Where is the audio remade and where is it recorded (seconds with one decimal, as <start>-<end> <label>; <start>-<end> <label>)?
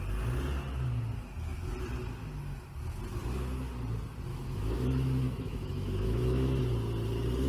0.0-4.3 recorded; 4.3-6.6 remade; 6.6-7.5 recorded